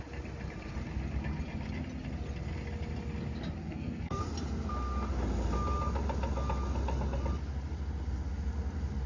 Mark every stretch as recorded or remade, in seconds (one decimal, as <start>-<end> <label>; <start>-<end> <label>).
0.0-3.6 recorded; 3.6-4.2 remade; 4.2-9.1 recorded